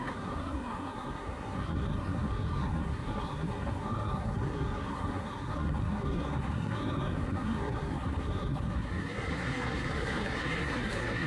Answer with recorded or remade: remade